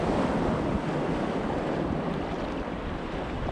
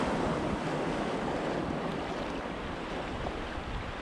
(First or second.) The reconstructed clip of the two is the first